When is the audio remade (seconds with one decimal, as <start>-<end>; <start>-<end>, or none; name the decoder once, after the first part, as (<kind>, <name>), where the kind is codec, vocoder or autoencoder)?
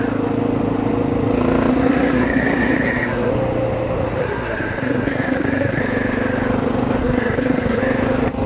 1.7-3.3 (codec, SNAC); 4.2-5.8; 7.0-7.8